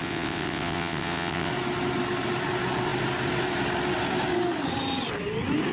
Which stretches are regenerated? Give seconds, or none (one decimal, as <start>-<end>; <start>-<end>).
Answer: 0.0-1.5